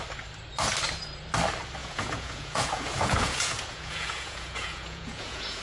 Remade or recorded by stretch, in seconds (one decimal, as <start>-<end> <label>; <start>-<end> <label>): 0.0-1.8 recorded; 1.8-5.6 remade